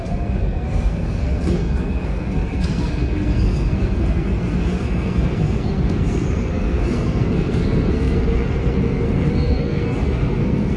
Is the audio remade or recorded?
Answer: remade